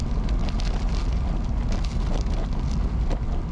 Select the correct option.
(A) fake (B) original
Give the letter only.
B